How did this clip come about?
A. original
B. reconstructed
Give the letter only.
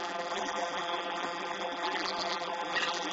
B